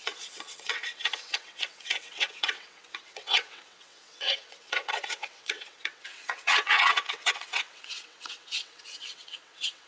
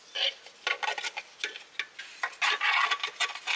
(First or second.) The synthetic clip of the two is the first